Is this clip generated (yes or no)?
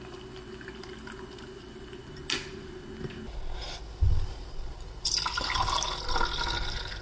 no